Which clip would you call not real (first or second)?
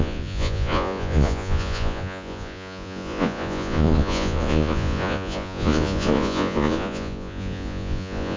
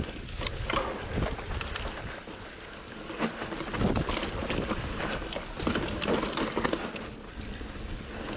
first